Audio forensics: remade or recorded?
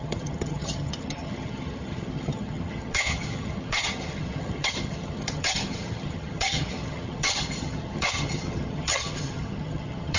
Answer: remade